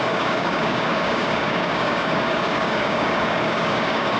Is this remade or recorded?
remade